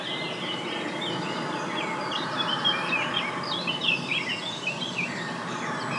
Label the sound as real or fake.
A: real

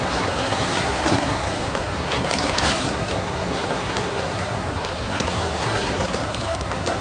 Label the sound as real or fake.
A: fake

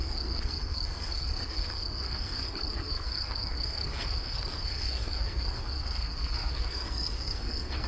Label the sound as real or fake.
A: fake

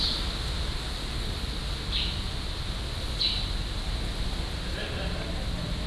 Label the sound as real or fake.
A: real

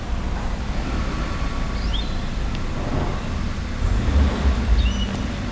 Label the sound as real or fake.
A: real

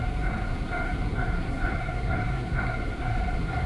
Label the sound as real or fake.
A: fake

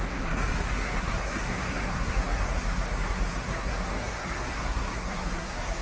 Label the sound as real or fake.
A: fake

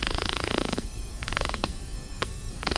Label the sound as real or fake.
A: fake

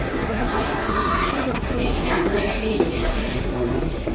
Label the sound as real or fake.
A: fake